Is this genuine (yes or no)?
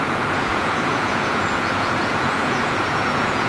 no